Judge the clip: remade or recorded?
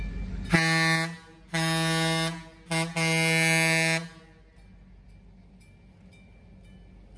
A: recorded